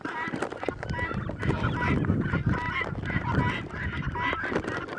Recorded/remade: recorded